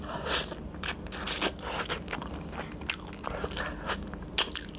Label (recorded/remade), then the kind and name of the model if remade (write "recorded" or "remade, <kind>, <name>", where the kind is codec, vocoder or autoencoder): recorded